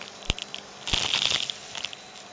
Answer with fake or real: real